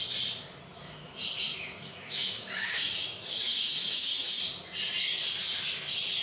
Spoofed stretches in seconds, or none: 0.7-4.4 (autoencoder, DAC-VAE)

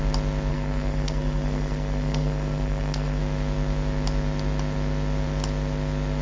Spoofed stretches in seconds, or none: 0.5-3.2 (codec, SNAC)

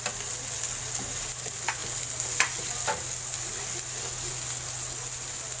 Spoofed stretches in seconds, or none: none

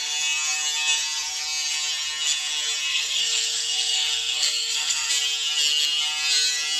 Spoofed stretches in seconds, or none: 2.9-5.1 (codec, SNAC)

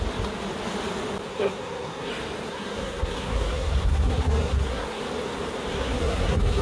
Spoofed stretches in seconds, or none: 1.3-2.1 (codec, SNAC); 2.5-5.0; 5.7-6.6